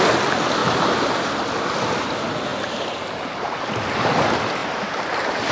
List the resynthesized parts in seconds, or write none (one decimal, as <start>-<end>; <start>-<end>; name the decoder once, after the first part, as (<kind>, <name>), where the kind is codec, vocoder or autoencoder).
0.6-1.3 (vocoder, BigVGAN v2); 2.5-3.0; 4.6-5.5